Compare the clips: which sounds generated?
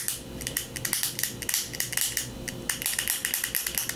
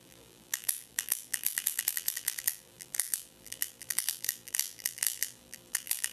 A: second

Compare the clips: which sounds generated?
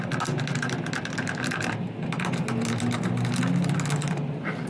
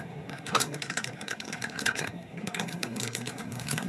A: second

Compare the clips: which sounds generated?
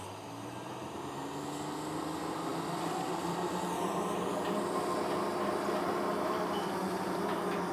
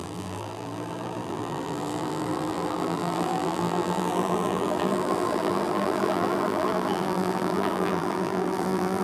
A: second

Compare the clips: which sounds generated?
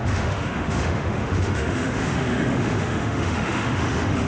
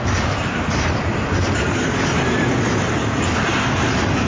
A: first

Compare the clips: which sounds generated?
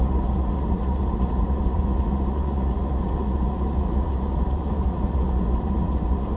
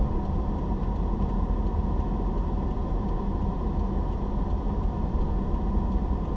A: first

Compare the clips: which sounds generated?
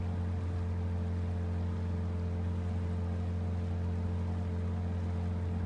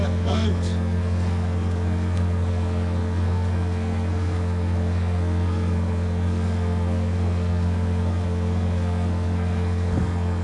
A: second